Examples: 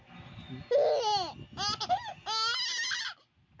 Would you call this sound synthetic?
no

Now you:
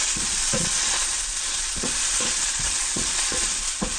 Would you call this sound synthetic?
yes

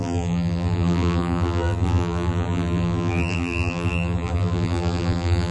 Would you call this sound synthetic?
yes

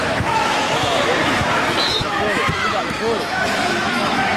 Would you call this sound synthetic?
yes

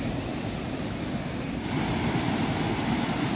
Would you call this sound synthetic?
yes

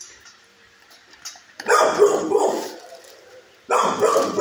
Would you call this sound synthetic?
yes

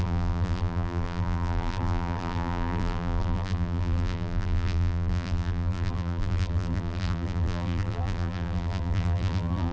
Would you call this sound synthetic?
yes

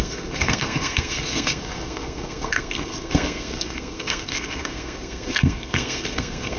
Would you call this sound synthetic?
yes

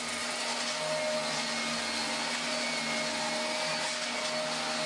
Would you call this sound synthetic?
no